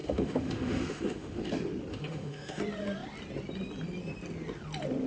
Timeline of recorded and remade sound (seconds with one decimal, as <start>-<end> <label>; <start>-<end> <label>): 0.0-1.5 remade; 1.5-1.9 recorded; 1.9-2.6 remade; 2.6-5.1 recorded